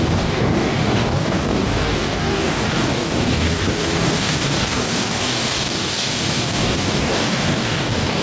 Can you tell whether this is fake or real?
fake